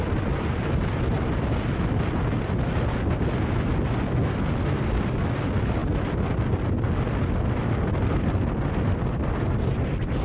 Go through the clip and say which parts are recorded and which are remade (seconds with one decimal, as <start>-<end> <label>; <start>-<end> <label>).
0.0-10.2 recorded